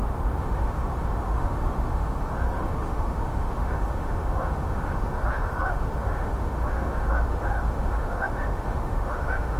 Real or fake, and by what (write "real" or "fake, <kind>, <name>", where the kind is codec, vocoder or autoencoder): fake, autoencoder, DAC-VAE